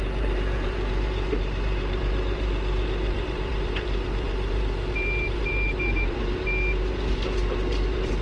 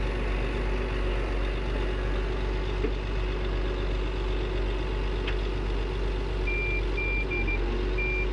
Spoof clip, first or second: first